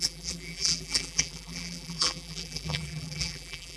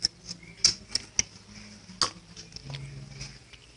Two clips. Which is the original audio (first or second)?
second